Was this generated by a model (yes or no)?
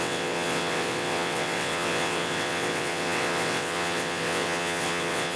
yes